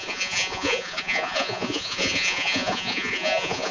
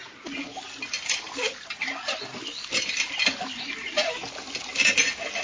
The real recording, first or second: second